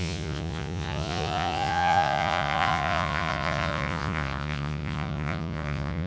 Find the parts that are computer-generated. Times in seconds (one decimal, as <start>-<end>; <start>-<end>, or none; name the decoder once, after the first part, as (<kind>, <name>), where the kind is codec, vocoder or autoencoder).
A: 0.0-6.1 (vocoder, Vocos)